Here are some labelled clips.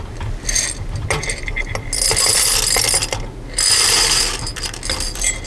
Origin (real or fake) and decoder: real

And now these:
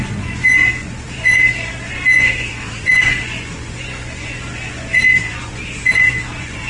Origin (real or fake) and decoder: fake, vocoder, Vocos